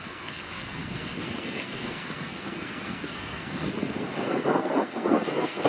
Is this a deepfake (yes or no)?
yes